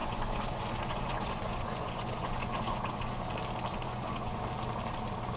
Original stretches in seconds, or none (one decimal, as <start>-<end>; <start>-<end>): 3.2-3.7; 4.4-5.4

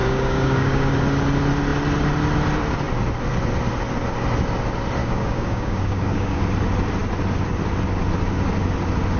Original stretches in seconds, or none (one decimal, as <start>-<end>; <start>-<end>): 0.9-5.0; 6.4-9.2

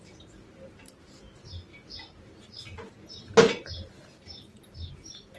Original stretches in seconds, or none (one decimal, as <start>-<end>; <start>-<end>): 0.0-5.4

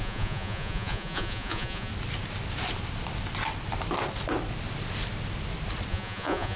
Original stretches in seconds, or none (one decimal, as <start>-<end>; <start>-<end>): 1.9-5.9

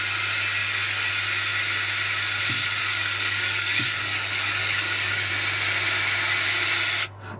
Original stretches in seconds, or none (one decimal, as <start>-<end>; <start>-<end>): 0.0-0.6; 1.1-2.8; 5.3-7.4